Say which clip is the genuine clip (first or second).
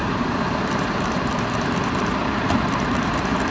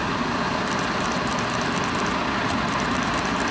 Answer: second